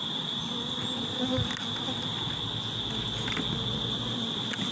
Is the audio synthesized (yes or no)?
no